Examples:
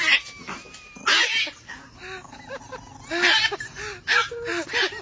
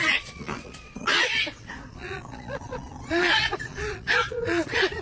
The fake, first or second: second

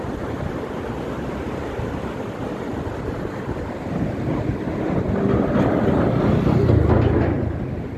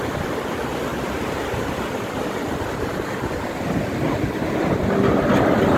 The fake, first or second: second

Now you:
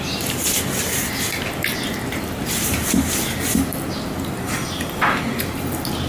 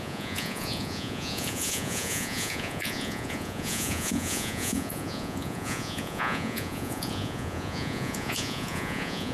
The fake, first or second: second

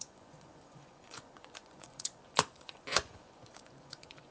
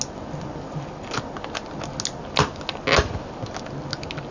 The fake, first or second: first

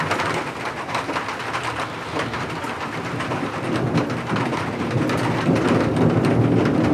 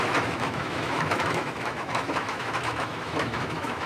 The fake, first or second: second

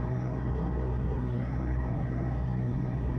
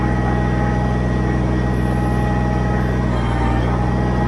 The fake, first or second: first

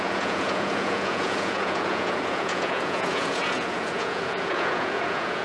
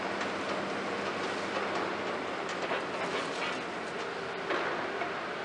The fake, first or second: first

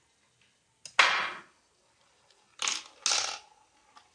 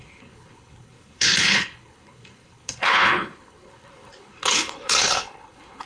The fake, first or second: second